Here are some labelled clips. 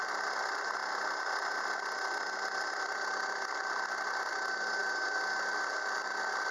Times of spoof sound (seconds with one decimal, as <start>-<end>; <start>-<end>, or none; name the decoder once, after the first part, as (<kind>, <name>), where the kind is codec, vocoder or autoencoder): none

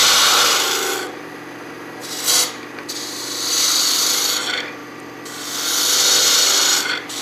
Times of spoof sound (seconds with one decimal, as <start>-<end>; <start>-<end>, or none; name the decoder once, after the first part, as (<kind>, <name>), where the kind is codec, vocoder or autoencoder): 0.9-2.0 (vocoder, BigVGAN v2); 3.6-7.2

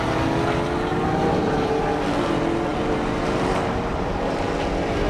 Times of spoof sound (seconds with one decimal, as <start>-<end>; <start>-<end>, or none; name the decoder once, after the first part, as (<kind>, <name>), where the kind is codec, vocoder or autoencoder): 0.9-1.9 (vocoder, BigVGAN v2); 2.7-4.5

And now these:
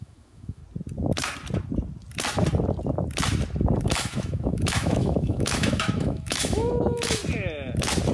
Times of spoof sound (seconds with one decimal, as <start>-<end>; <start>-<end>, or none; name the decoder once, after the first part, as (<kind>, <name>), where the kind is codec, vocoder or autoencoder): 0.0-0.6 (autoencoder, DAC-VAE); 3.8-7.2

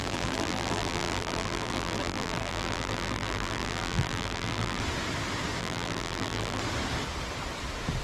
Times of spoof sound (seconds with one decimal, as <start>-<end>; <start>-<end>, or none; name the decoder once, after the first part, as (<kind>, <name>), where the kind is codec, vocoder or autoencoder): 0.0-4.8 (vocoder, BigVGAN v2); 5.6-6.6